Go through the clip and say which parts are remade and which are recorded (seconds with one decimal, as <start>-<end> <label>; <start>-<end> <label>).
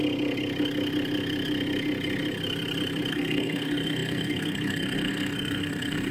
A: 0.0-3.1 recorded; 3.1-6.1 remade